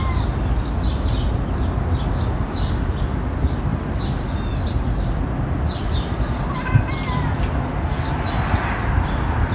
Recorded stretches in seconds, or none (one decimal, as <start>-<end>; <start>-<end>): 0.0-9.5